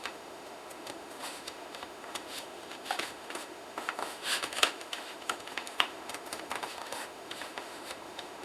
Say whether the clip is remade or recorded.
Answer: remade